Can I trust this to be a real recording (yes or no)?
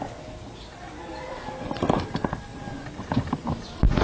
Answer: yes